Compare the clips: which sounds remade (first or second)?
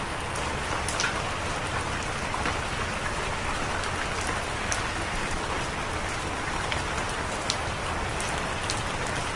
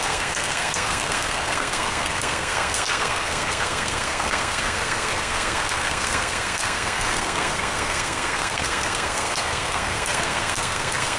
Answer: second